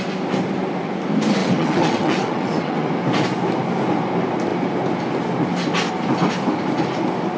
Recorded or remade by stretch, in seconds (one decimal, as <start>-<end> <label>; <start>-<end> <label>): 0.0-1.4 recorded; 1.4-2.9 remade; 2.9-7.4 recorded